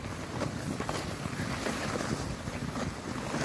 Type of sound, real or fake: real